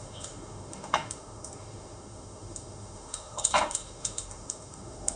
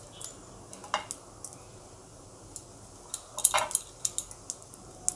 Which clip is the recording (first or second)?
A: second